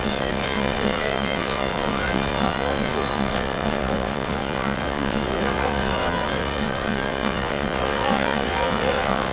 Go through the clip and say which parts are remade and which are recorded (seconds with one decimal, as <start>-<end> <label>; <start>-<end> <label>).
0.0-9.3 remade